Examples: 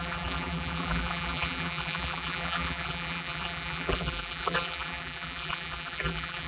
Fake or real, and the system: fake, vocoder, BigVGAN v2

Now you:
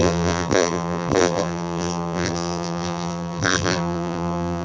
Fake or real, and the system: fake, vocoder, BigVGAN v2